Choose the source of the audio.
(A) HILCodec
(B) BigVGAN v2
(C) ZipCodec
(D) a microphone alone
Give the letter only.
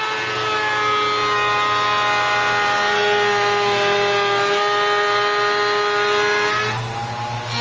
D